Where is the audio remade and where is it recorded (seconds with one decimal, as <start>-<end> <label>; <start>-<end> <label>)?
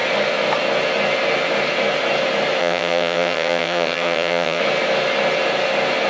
0.0-2.6 recorded; 2.6-4.6 remade; 4.6-6.1 recorded